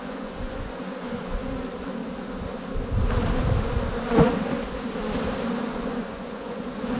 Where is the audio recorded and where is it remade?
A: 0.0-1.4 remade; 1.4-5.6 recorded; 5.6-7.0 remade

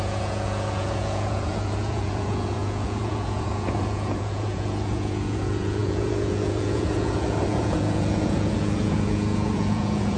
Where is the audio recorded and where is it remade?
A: 0.0-10.2 remade

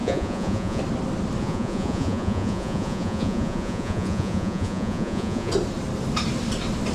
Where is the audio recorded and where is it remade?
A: 0.0-0.8 remade; 0.8-1.4 recorded; 1.4-5.5 remade; 5.5-6.9 recorded

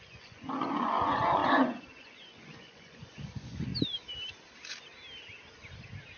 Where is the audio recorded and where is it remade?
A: 0.0-3.7 remade; 3.7-6.2 recorded

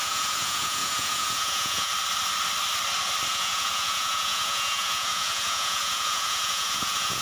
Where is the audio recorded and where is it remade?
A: 0.0-1.9 remade; 1.9-3.3 recorded; 3.3-7.2 remade

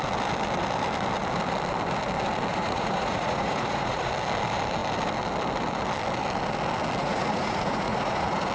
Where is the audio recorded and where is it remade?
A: 0.0-2.5 recorded; 2.5-4.1 remade; 4.1-7.0 recorded; 7.0-8.5 remade

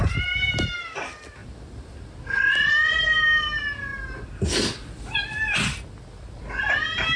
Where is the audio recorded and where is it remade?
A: 0.0-7.2 recorded